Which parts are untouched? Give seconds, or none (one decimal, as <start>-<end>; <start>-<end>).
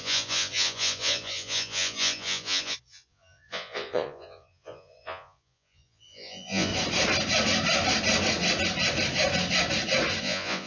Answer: 6.7-10.2